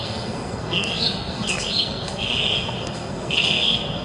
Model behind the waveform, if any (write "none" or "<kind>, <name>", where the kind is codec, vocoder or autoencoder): codec, SNAC